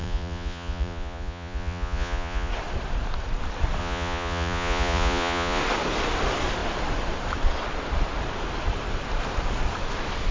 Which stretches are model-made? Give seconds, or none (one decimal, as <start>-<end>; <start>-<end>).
0.0-2.5; 3.8-5.6